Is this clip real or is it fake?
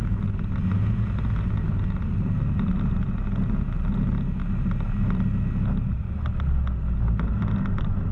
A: real